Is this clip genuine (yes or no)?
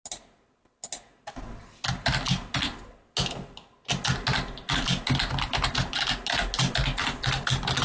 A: yes